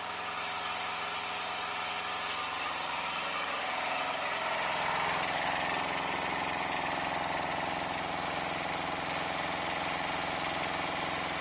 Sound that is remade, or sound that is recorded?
recorded